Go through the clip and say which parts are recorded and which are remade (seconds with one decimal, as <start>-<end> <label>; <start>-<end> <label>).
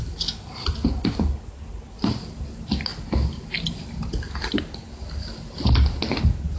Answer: 0.0-6.6 recorded